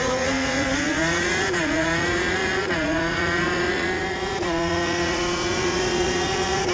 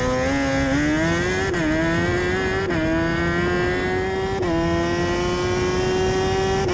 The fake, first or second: first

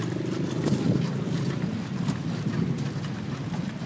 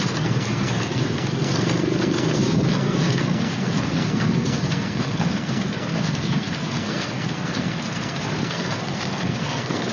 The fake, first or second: second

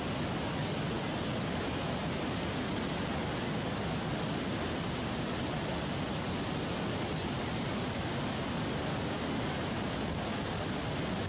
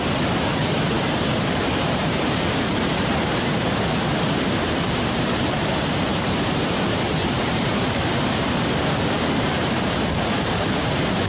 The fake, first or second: second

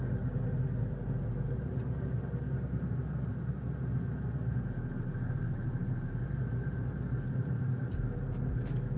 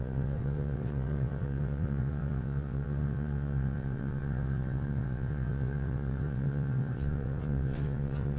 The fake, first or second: second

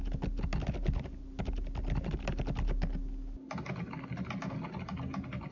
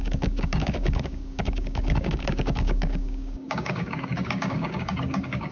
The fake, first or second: second